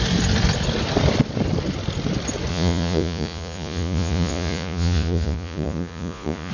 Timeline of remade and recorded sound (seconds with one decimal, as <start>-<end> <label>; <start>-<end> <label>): 0.0-2.5 recorded; 2.5-6.5 remade

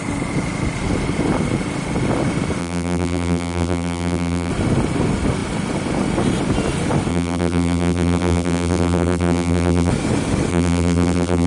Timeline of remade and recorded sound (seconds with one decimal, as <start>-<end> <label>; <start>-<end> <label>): 0.0-2.6 recorded; 2.6-4.5 remade; 4.5-7.1 recorded; 7.1-9.9 remade; 9.9-10.5 recorded; 10.5-11.5 remade

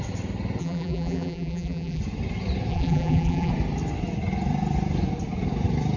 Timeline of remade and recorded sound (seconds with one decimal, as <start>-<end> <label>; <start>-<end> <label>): 0.0-0.6 recorded; 0.6-2.0 remade; 2.0-2.7 recorded; 2.7-3.5 remade; 3.5-6.0 recorded

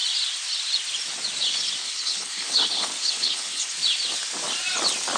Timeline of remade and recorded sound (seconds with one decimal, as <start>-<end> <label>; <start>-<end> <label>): 0.0-1.8 recorded; 1.8-3.7 remade; 3.7-5.2 recorded

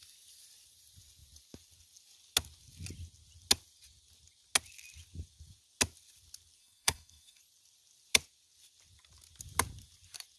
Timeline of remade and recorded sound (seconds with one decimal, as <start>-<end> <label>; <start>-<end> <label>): 0.0-6.6 recorded; 6.6-7.4 remade; 7.4-10.4 recorded

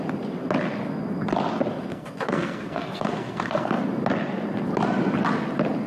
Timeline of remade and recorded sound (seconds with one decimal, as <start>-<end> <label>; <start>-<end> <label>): 0.0-1.9 recorded; 1.9-3.8 remade; 3.8-5.9 recorded

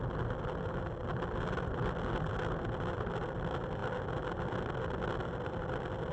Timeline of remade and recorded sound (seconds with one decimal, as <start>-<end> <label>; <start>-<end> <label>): 0.0-6.1 recorded

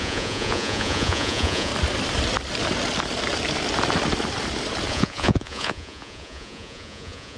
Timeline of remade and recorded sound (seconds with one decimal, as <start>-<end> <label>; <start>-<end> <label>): 0.0-1.7 remade; 1.7-4.9 recorded; 4.9-7.4 remade